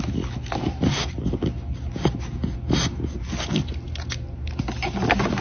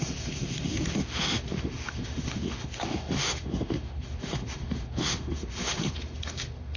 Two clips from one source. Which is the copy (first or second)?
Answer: second